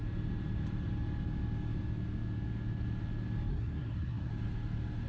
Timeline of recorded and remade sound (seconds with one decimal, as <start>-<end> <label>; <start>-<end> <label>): 0.0-3.5 recorded; 3.5-4.3 remade; 4.3-5.1 recorded